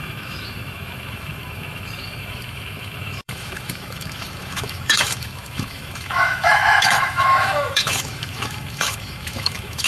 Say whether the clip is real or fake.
fake